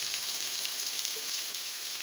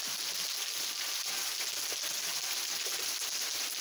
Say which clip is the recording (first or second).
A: second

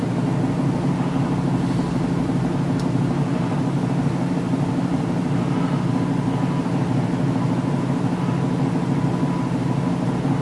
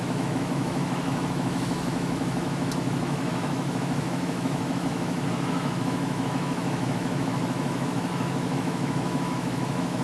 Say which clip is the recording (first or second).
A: first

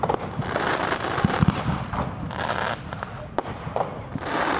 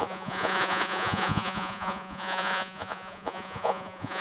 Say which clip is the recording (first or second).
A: first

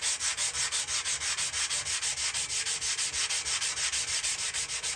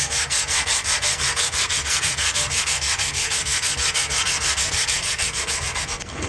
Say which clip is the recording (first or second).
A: first